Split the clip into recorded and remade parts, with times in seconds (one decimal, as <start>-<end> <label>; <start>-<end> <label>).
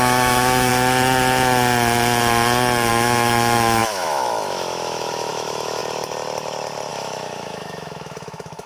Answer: 0.0-0.7 remade; 0.7-2.9 recorded; 2.9-5.8 remade; 5.8-6.9 recorded; 6.9-8.7 remade